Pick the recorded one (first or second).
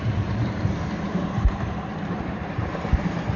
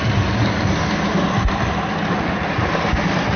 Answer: second